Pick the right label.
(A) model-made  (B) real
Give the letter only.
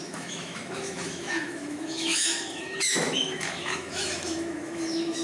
A